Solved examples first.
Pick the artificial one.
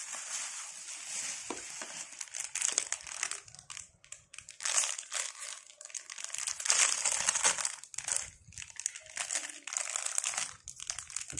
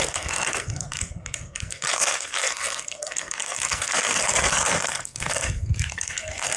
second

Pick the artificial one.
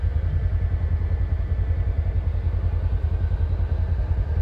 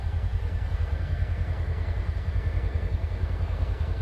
second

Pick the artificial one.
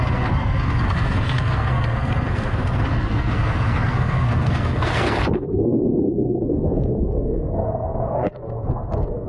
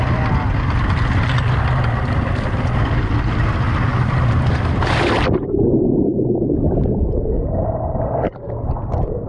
first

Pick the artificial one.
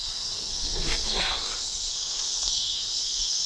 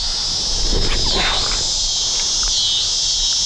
first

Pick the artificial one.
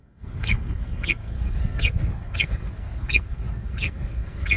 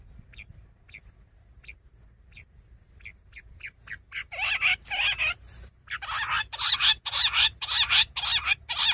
first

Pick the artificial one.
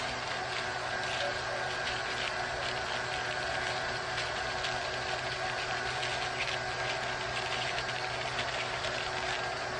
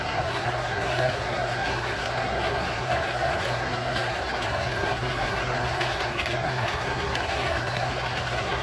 second